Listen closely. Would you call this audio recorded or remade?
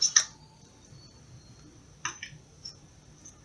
recorded